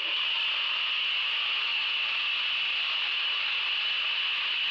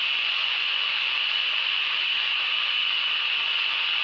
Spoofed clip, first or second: second